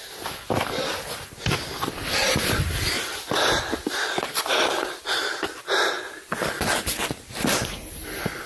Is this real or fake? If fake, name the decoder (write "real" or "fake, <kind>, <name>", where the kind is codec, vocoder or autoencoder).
real